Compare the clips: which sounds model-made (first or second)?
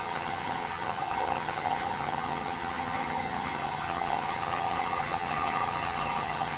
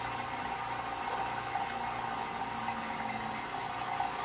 first